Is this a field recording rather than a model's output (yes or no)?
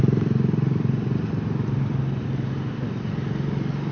yes